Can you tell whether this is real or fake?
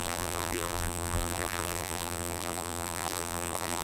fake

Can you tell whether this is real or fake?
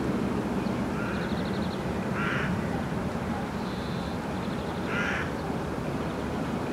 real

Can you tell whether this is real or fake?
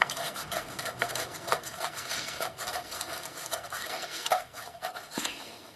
fake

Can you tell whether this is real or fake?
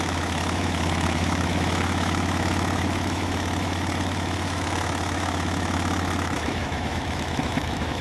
fake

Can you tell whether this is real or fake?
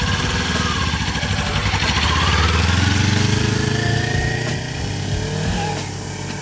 real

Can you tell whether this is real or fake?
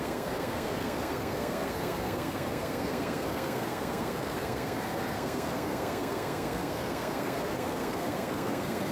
fake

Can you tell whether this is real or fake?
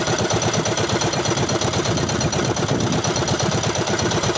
fake